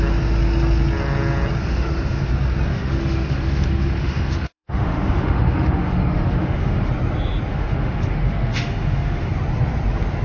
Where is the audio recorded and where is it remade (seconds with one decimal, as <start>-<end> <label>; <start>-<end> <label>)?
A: 0.0-1.6 recorded; 1.6-2.3 remade; 2.3-2.7 recorded; 2.7-6.9 remade; 6.9-7.5 recorded; 7.5-9.3 remade; 9.3-10.2 recorded